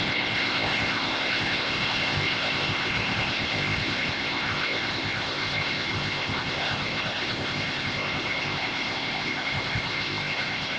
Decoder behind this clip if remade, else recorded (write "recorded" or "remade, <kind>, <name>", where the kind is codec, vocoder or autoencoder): remade, codec, ZipCodec